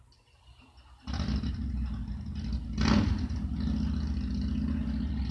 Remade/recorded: recorded